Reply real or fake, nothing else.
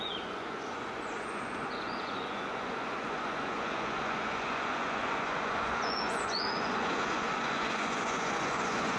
fake